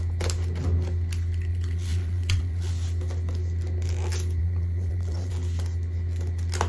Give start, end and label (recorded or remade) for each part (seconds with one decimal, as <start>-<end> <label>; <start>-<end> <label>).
0.0-1.5 recorded; 1.5-2.7 remade; 2.7-4.4 recorded; 4.4-5.3 remade; 5.3-6.7 recorded